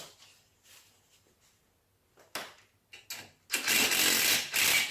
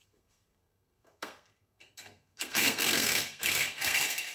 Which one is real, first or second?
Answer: first